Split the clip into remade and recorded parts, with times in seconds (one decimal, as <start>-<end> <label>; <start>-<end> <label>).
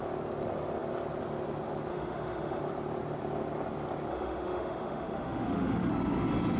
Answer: 0.0-1.9 recorded; 1.9-2.6 remade; 2.6-4.1 recorded; 4.1-5.9 remade; 5.9-6.6 recorded